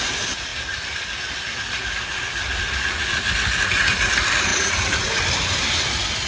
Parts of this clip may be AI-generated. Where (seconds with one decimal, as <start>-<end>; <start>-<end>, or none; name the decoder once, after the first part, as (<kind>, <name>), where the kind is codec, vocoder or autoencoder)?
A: 4.5-5.2 (vocoder, Vocos)